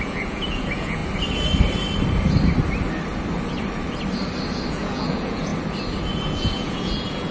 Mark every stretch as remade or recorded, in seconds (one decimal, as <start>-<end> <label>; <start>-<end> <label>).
0.0-1.0 remade; 1.0-4.7 recorded; 4.7-5.5 remade; 5.5-6.1 recorded; 6.1-7.3 remade